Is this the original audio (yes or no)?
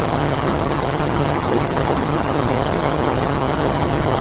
no